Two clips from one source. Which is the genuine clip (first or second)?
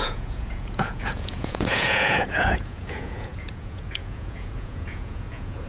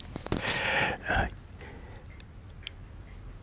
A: second